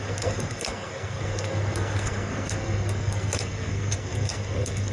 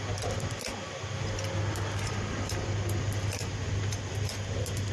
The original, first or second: second